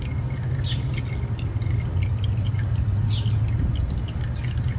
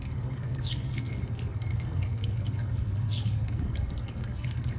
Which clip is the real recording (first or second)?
first